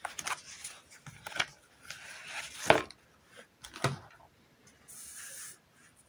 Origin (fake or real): real